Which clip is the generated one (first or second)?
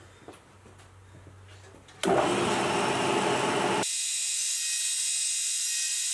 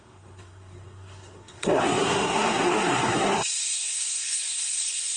second